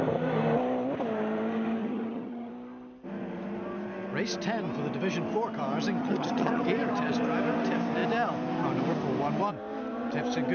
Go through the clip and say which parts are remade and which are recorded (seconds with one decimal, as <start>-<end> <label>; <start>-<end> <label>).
0.0-1.8 recorded; 1.8-2.5 remade; 2.5-6.0 recorded; 6.0-6.6 remade; 6.6-10.5 recorded